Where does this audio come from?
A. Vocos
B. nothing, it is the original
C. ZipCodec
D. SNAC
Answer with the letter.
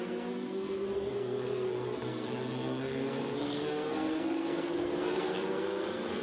D